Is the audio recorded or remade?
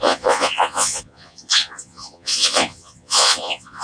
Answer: remade